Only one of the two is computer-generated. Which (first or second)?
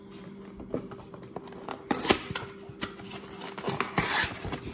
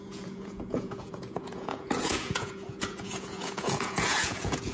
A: second